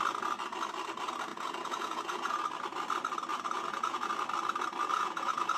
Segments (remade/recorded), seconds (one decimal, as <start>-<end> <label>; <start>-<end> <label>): 0.0-1.3 recorded; 1.3-2.4 remade; 2.4-3.3 recorded; 3.3-4.1 remade; 4.1-4.8 recorded; 4.8-5.6 remade